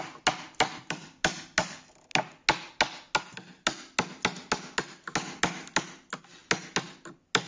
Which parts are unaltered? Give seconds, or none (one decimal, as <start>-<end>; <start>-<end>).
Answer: 0.0-7.5